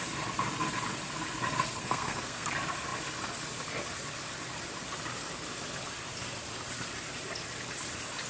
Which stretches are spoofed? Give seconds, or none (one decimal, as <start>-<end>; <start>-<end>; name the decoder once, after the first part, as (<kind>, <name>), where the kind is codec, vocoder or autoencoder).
1.8-2.5 (codec, SNAC)